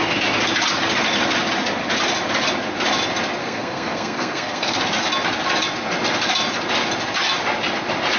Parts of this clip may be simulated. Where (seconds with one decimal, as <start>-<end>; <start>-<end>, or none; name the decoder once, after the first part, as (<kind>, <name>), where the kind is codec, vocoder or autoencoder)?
3.4-4.8 (codec, SNAC)